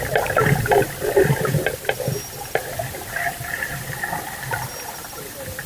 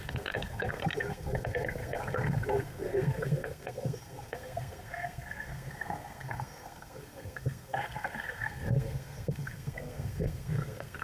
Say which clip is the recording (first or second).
first